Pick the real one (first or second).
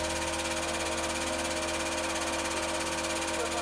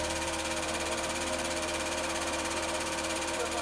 first